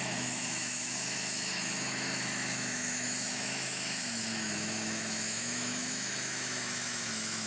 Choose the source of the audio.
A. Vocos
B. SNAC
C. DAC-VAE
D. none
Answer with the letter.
C